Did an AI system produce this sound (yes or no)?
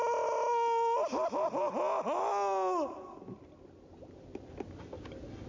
no